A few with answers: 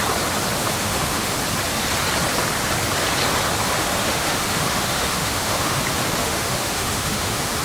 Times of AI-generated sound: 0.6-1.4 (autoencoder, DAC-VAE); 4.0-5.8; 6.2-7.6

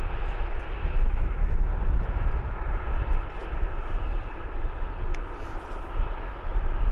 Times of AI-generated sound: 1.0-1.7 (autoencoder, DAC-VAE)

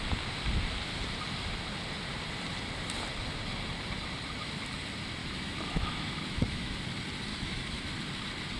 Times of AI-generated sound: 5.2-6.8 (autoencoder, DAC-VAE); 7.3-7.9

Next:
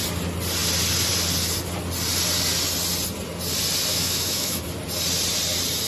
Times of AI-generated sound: 3.9-4.6 (autoencoder, DAC-VAE)

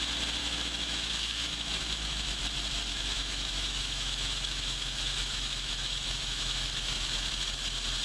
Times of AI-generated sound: 0.4-2.4 (autoencoder, DAC-VAE); 2.9-7.4

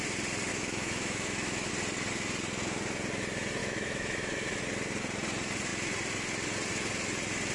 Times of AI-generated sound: 0.5-1.7 (autoencoder, DAC-VAE); 3.6-4.6

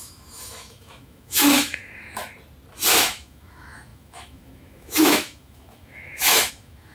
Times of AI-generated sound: 0.0-2.2 (autoencoder, DAC-VAE); 2.9-6.9